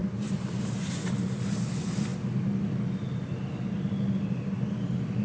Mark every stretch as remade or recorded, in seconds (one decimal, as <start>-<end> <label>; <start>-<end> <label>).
0.0-5.2 recorded